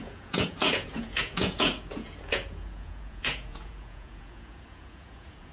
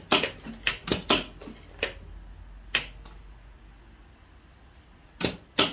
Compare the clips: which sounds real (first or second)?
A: second